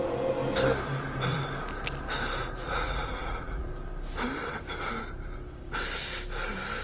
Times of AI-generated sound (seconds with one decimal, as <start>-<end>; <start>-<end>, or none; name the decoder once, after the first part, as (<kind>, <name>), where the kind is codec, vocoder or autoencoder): 2.4-3.7 (vocoder, Vocos)